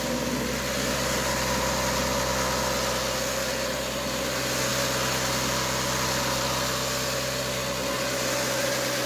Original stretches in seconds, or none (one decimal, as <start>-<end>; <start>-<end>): 0.0-9.1